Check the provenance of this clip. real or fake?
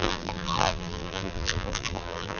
fake